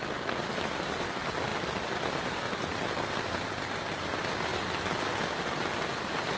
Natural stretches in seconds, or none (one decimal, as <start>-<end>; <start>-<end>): 0.0-6.4